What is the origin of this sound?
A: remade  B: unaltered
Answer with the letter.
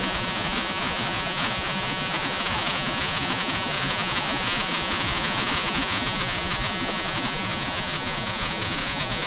A